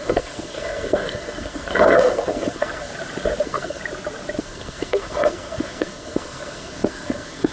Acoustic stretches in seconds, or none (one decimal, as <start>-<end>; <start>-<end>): 2.9-3.4; 3.8-4.4